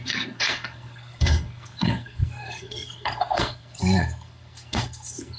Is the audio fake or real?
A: fake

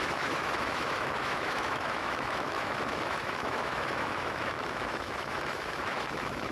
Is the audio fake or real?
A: fake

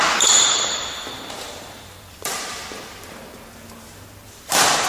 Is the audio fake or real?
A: fake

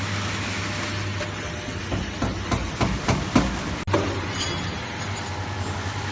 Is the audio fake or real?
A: real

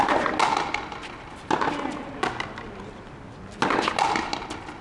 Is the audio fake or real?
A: real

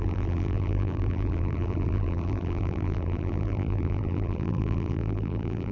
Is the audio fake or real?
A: fake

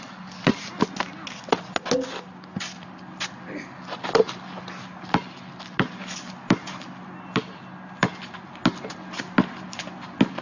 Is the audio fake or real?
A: real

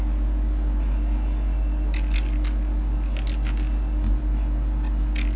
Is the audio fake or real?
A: real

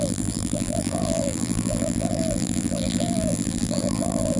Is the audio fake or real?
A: fake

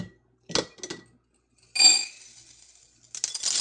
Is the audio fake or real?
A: real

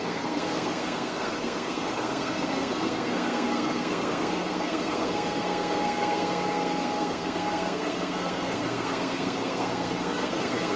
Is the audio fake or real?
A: fake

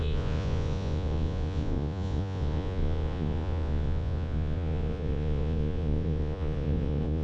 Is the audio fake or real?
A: fake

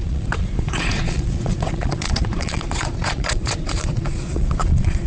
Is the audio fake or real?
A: fake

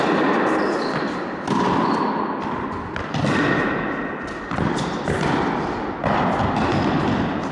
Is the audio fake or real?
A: real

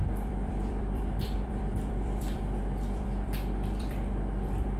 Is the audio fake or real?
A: fake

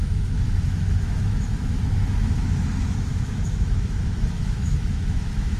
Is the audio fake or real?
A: fake